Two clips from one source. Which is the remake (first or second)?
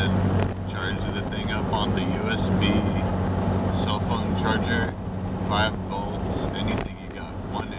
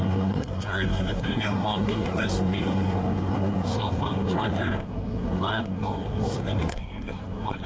second